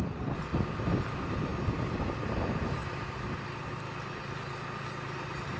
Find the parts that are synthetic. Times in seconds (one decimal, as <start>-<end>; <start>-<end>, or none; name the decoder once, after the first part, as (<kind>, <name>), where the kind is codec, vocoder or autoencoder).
none